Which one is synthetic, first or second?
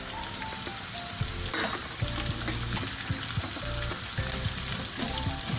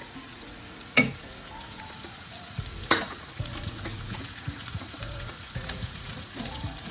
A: second